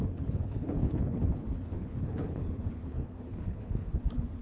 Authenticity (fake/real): fake